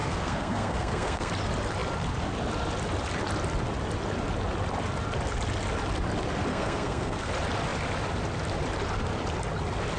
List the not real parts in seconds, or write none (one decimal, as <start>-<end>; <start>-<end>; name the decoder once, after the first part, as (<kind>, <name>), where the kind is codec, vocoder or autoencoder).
0.0-1.3 (codec, SNAC); 6.5-7.3